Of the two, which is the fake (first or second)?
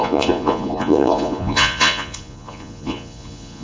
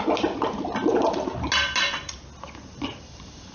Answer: first